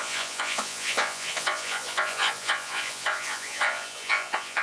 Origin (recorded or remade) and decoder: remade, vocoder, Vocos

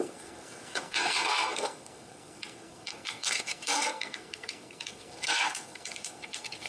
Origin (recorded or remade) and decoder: remade, codec, SNAC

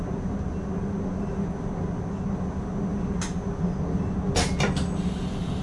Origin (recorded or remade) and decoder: recorded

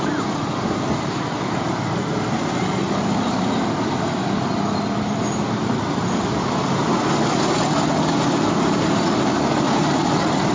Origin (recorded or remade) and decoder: recorded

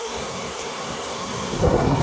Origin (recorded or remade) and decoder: remade, codec, SNAC